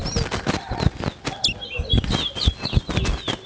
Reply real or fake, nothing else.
real